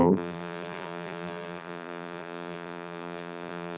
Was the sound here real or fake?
fake